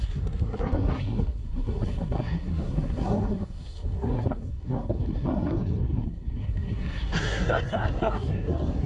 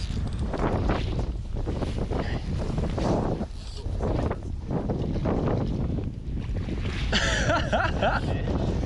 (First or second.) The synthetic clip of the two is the first